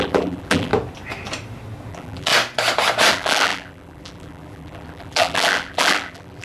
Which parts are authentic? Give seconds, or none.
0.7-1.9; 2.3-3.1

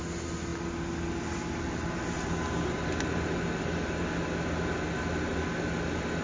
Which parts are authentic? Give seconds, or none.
0.0-6.2

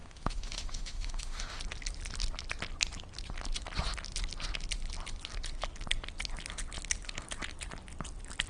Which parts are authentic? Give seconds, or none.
1.6-8.5

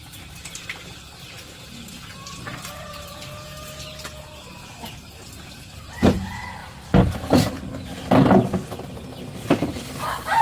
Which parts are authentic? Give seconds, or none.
0.0-10.4

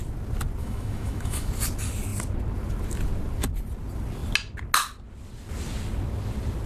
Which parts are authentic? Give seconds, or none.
0.0-0.6; 1.5-6.7